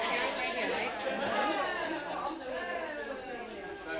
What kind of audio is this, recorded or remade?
recorded